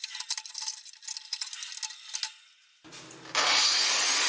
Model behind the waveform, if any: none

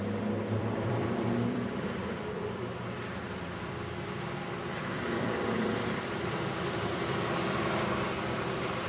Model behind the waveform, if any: vocoder, BigVGAN v2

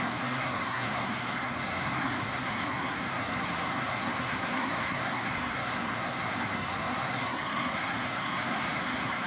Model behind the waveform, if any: codec, SNAC